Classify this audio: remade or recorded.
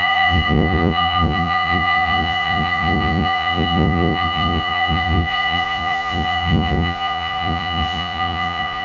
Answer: remade